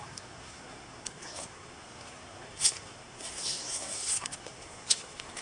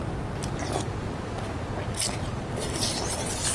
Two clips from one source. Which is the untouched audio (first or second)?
second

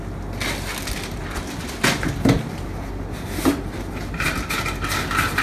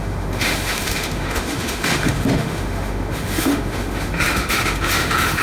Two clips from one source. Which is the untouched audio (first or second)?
first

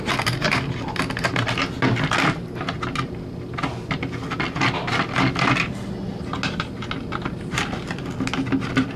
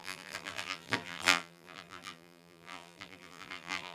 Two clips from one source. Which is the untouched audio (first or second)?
first